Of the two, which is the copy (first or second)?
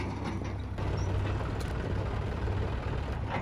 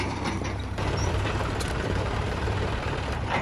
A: second